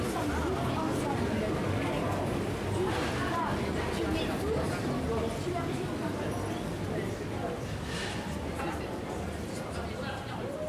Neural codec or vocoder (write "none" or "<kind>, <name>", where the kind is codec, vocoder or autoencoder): none